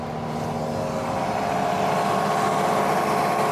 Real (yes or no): yes